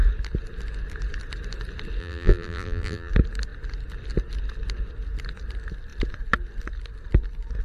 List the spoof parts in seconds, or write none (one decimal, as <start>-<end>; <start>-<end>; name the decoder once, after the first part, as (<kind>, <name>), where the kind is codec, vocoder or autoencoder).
2.0-3.1 (vocoder, BigVGAN v2)